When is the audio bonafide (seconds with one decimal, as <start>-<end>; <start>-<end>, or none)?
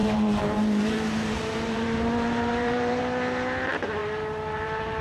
3.0-4.0